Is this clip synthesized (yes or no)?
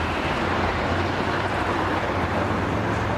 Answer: yes